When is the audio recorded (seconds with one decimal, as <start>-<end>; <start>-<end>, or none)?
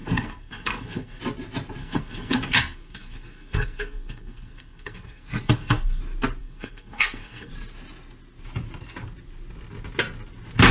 1.2-1.8; 6.0-6.4; 7.5-10.7